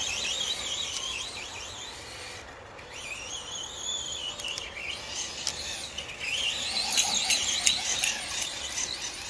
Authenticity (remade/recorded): recorded